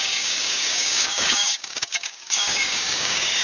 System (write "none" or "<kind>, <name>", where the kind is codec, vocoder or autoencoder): codec, DAC